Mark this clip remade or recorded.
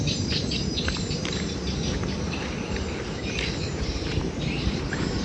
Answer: remade